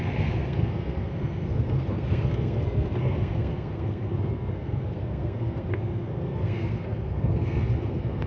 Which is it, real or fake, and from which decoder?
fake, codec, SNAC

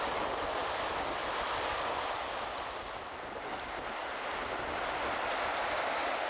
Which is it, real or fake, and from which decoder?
real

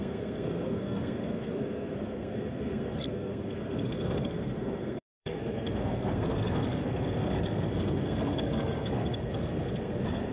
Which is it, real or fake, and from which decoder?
fake, codec, SNAC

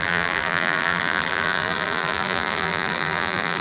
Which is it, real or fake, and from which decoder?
fake, vocoder, BigVGAN v2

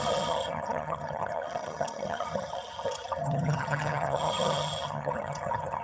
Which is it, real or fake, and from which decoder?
fake, vocoder, HiFi-GAN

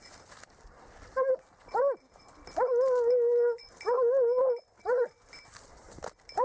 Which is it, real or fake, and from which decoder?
real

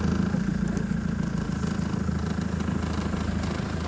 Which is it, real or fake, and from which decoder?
real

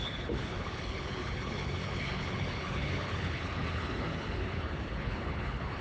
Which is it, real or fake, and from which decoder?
fake, codec, HILCodec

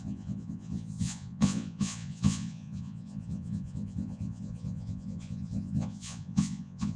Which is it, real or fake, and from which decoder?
fake, vocoder, Vocos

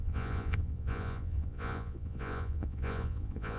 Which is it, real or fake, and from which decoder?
fake, vocoder, Vocos